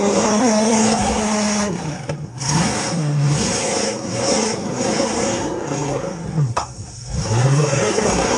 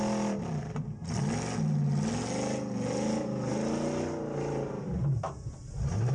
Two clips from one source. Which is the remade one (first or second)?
first